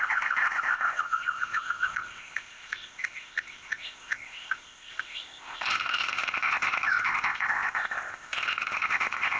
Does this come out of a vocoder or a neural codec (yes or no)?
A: yes